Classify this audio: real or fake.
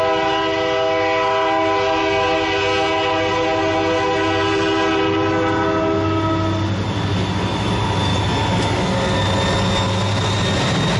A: real